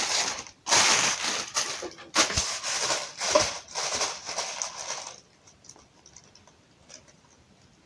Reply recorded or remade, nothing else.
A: remade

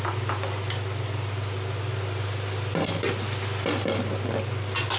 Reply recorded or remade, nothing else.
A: recorded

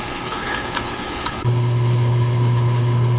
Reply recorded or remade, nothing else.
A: remade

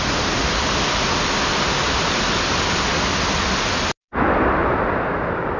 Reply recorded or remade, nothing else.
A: recorded